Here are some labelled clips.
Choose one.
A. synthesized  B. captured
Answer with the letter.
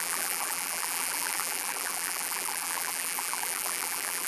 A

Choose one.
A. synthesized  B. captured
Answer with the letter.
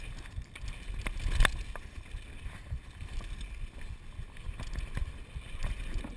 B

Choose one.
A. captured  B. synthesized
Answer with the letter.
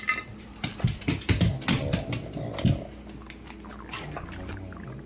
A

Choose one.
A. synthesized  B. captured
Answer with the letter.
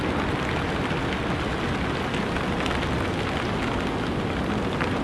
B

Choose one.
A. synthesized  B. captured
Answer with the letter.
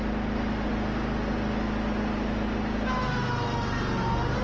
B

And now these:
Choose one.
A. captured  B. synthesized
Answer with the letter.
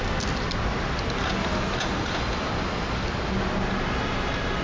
A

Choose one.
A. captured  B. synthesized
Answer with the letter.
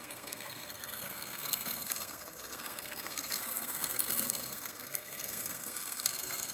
B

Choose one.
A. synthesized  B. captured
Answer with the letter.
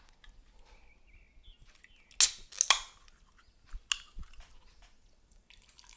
B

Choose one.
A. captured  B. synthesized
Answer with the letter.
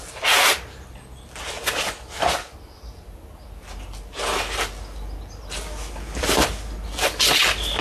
A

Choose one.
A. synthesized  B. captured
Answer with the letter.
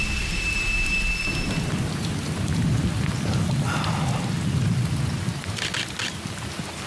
B